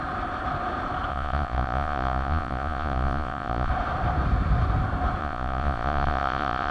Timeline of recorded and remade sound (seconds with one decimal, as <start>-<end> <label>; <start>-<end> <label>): 0.0-1.1 recorded; 1.1-3.7 remade; 3.7-5.2 recorded; 5.2-6.7 remade